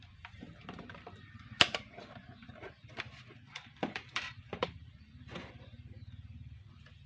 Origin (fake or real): fake